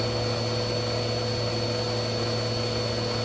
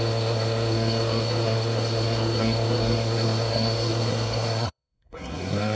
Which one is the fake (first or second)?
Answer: second